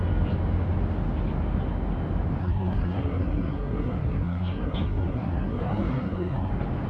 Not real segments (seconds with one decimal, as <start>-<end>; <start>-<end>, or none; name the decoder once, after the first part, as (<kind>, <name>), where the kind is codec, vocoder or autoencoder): 2.4-6.5 (codec, SNAC)